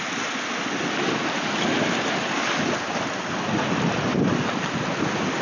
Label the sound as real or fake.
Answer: real